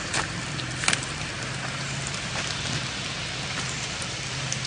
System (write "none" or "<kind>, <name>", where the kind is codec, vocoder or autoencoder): none